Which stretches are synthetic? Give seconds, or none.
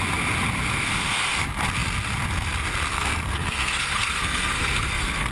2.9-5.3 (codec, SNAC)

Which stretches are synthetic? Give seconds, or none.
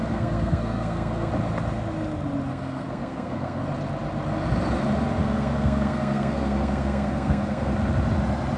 0.0-1.3 (codec, SNAC); 2.5-3.6; 5.2-7.7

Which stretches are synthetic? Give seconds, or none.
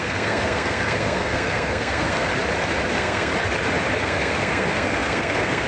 0.0-2.3 (codec, SNAC); 2.9-3.3; 4.0-5.7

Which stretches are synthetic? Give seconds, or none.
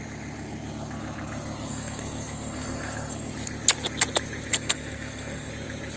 1.7-3.3 (codec, SNAC); 4.5-5.5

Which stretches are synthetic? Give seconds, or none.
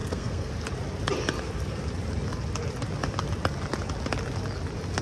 0.0-0.5 (codec, SNAC)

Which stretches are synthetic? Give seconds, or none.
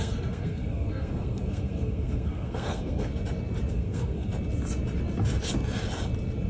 0.0-3.1 (codec, SNAC); 3.7-4.3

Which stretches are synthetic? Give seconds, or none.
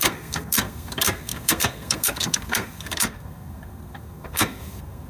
0.0-5.1 (codec, SNAC)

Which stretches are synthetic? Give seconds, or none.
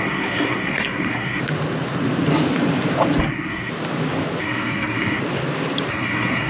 0.0-1.4 (codec, SNAC); 3.2-3.7; 4.4-5.2; 5.9-6.5